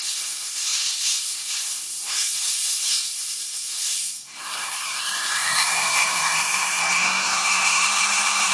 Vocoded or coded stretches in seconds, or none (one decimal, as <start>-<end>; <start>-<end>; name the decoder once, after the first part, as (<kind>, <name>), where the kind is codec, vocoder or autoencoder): 0.0-8.5 (codec, SNAC)